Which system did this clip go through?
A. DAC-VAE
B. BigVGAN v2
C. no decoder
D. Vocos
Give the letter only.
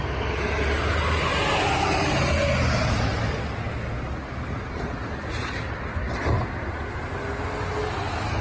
C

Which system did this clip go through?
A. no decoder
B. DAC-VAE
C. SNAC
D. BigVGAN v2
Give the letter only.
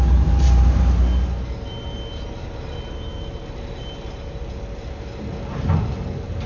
A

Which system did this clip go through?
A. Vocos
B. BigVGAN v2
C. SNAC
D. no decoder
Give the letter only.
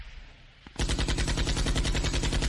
D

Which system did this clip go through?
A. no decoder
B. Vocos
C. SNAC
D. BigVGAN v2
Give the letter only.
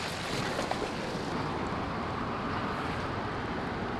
A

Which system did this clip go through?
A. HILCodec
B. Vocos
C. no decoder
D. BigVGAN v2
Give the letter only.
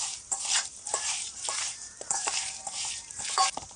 D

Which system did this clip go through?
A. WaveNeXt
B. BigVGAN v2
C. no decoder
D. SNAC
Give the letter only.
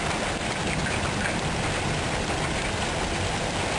C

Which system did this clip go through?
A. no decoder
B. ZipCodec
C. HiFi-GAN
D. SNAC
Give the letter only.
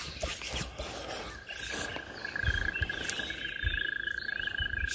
A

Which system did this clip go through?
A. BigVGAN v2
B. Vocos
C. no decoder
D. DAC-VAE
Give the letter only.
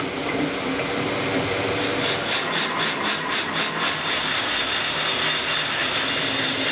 C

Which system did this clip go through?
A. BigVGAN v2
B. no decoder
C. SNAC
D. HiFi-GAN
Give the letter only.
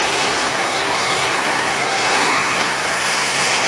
C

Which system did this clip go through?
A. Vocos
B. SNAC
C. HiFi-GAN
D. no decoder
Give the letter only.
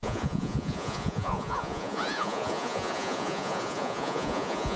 A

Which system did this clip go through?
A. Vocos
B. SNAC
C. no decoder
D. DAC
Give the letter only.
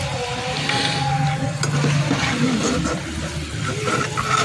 C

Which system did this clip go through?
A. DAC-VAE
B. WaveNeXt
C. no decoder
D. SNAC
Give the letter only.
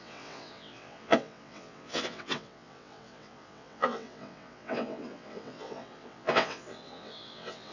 B